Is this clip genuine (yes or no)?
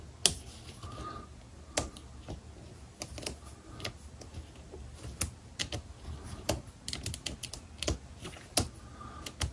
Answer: yes